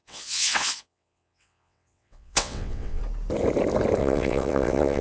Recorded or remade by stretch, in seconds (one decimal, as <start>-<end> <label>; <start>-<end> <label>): 0.0-3.0 remade; 3.0-4.0 recorded; 4.0-5.0 remade